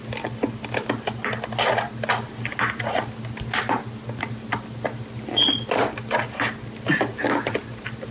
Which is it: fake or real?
real